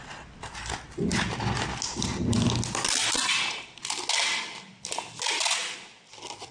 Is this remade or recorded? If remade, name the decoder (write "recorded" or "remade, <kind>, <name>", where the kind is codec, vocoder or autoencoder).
recorded